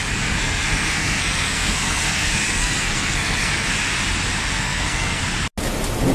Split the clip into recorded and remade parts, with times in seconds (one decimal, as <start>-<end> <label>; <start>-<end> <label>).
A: 0.0-3.7 remade; 3.7-4.4 recorded; 4.4-5.2 remade; 5.2-6.1 recorded

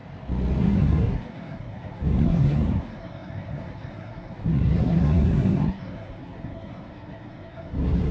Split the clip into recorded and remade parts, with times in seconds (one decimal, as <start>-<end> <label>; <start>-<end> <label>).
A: 0.0-0.6 recorded; 0.6-8.1 remade

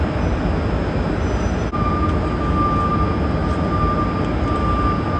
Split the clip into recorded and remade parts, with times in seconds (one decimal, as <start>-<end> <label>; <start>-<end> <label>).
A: 0.0-5.2 recorded

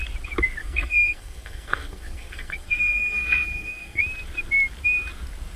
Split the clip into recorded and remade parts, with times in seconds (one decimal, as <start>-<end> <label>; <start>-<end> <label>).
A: 0.0-0.6 recorded; 0.6-4.0 remade; 4.0-5.6 recorded

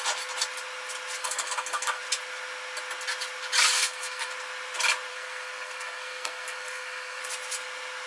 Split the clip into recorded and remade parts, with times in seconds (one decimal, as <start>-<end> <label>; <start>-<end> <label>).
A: 0.0-1.2 recorded; 1.2-2.0 remade; 2.0-3.7 recorded; 3.7-4.3 remade; 4.3-5.1 recorded; 5.1-7.2 remade; 7.2-8.1 recorded

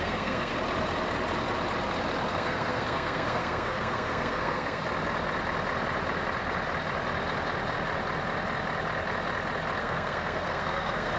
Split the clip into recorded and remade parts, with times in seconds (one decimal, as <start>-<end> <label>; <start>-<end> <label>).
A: 0.0-0.5 remade; 0.5-2.3 recorded; 2.3-4.8 remade; 4.8-9.8 recorded; 9.8-11.2 remade